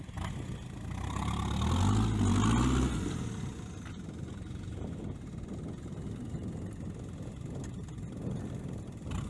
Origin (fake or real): real